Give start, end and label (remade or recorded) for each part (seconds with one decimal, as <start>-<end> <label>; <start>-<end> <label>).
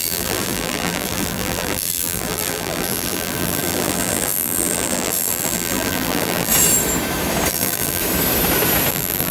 0.0-6.5 remade; 6.5-7.5 recorded; 7.5-8.0 remade; 8.0-8.9 recorded; 8.9-9.3 remade